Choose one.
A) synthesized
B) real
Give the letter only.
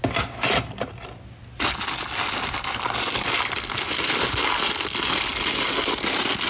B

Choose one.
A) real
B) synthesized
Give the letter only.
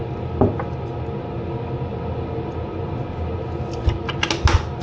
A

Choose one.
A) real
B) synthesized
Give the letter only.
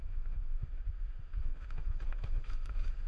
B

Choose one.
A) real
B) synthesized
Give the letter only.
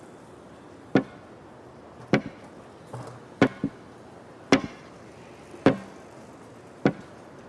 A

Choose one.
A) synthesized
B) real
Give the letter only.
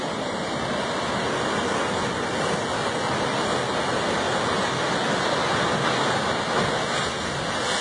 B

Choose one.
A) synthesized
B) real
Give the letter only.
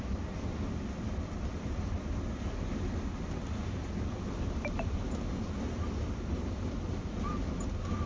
B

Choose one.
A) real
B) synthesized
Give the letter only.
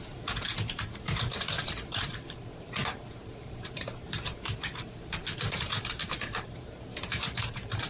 B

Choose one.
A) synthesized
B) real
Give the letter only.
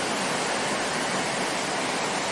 B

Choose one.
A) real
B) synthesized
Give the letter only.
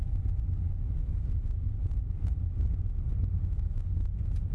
A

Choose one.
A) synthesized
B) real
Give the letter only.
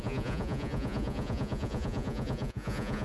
A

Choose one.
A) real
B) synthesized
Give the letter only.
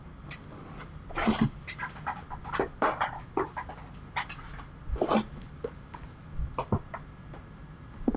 A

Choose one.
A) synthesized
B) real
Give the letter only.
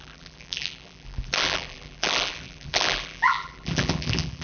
A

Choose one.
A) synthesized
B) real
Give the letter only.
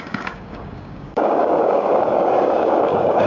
A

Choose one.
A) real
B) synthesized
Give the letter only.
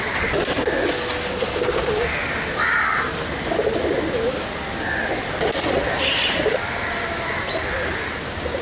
A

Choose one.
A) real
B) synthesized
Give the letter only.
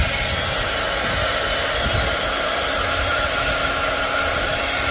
A